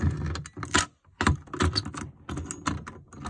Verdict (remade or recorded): recorded